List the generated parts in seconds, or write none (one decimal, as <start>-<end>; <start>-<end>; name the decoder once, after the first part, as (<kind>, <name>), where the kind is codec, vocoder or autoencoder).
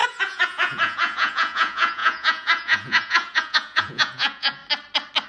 0.0-4.6 (vocoder, Vocos)